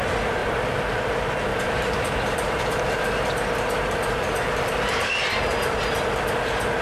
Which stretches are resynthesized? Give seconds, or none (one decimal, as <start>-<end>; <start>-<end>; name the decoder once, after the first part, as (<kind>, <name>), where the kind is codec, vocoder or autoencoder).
0.4-1.0 (vocoder, BigVGAN v2); 1.5-5.1